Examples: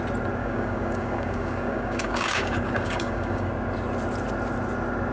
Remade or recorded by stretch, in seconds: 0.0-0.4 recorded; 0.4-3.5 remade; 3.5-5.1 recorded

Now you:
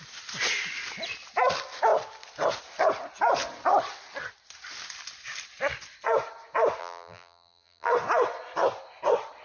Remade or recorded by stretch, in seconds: 0.0-6.8 recorded; 6.8-7.9 remade; 7.9-9.4 recorded

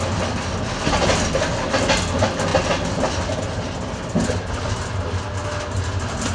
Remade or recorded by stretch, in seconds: 0.0-6.3 recorded

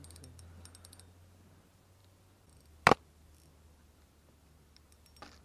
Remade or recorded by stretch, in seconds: 0.0-5.4 recorded

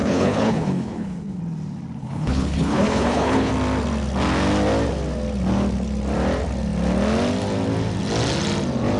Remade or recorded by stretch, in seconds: 0.0-1.4 remade; 1.4-2.0 recorded; 2.0-3.5 remade; 3.5-9.0 recorded